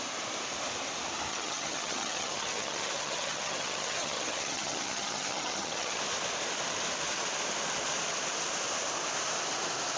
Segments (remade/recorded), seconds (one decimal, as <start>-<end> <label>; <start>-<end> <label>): 0.0-1.3 recorded; 1.3-6.0 remade; 6.0-10.0 recorded